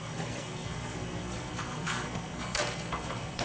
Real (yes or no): no